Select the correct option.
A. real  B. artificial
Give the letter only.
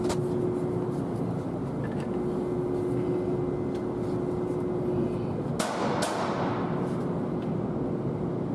A